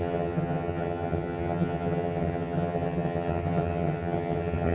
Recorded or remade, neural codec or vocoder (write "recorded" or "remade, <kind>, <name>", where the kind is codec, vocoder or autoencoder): remade, vocoder, HiFi-GAN